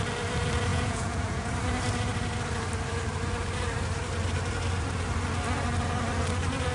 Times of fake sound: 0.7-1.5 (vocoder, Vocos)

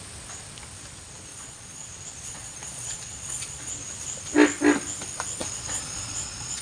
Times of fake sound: 1.3-1.9 (vocoder, Vocos); 2.3-3.7; 5.4-6.6